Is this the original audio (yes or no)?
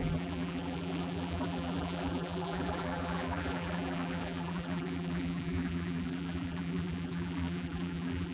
no